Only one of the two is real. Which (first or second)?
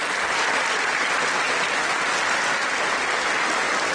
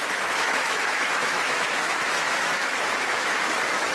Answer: first